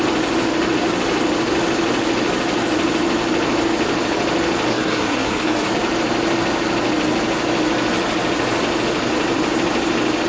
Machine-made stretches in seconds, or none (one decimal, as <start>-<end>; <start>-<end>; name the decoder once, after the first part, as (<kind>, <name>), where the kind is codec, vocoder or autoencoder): 4.7-5.7 (codec, SNAC)